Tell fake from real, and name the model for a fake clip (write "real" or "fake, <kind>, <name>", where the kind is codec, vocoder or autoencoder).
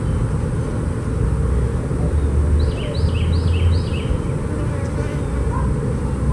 real